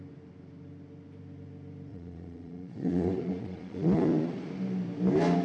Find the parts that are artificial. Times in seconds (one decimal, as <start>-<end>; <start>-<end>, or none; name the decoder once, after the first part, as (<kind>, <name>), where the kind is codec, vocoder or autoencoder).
1.9-4.5 (vocoder, Vocos)